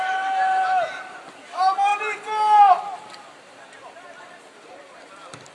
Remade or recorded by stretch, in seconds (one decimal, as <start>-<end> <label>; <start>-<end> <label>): 0.0-5.5 recorded